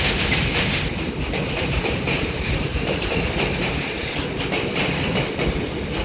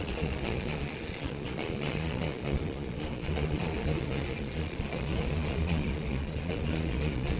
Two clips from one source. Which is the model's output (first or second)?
second